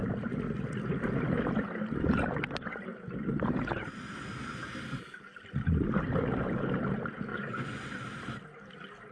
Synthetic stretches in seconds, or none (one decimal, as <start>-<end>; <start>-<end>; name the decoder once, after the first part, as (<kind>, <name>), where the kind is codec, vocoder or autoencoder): 7.3-7.9 (vocoder, Vocos)